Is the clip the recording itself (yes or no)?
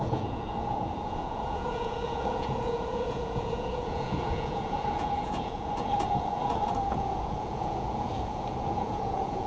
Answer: no